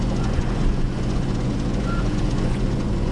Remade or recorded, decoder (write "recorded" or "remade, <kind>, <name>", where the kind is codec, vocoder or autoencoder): remade, vocoder, Vocos